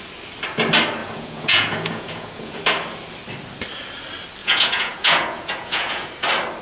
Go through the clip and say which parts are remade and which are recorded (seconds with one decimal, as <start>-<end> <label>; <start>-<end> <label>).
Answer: 0.0-1.0 recorded; 1.0-2.6 remade; 2.6-4.4 recorded; 4.4-6.1 remade; 6.1-6.6 recorded